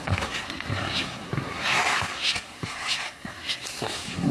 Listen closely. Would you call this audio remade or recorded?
remade